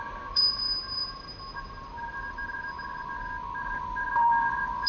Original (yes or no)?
no